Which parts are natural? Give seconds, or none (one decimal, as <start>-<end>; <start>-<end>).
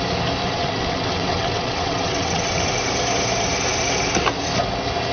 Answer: 0.0-0.4; 2.7-5.1